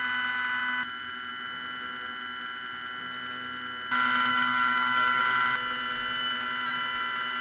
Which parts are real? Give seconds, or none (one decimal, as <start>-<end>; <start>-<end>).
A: 0.0-4.3; 5.2-7.4